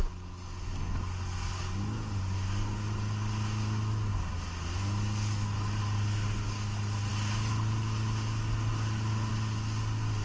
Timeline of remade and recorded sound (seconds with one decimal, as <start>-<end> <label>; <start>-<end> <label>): 0.0-10.2 recorded